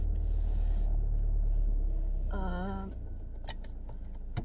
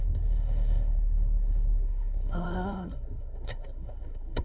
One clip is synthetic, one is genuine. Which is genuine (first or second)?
first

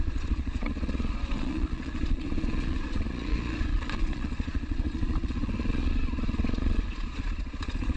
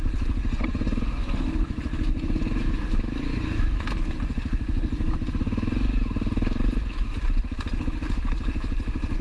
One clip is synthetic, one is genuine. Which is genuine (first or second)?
second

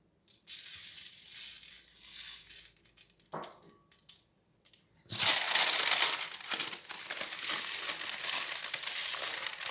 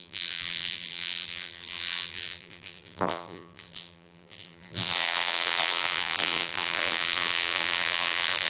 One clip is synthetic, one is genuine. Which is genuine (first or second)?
first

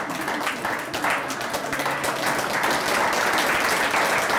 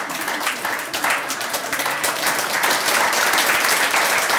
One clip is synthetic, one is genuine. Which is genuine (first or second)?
first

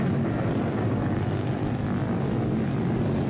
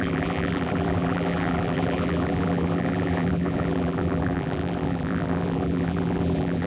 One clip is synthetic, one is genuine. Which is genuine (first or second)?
first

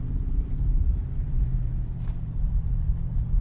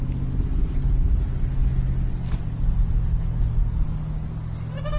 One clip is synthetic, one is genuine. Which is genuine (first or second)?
second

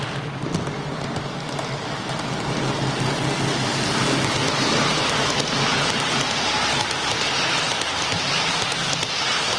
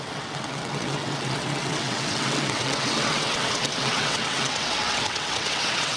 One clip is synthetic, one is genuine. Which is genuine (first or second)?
first